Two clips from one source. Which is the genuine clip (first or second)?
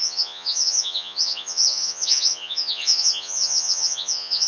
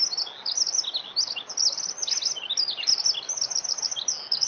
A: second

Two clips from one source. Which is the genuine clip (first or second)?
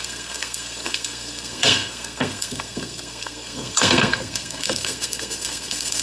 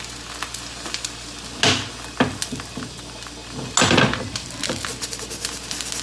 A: second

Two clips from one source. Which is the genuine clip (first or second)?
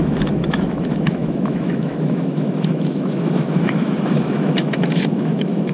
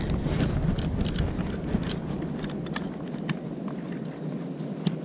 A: second